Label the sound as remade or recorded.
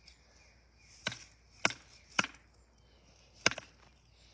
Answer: recorded